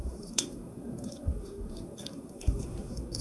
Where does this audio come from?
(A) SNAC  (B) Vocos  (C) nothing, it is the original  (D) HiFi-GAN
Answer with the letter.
A